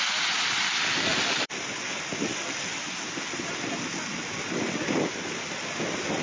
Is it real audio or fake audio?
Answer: real